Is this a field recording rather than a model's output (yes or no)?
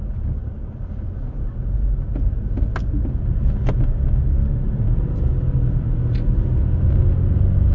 yes